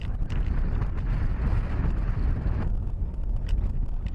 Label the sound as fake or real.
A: real